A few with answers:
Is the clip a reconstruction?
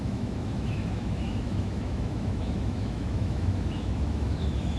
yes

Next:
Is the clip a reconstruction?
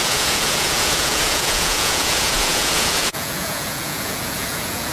yes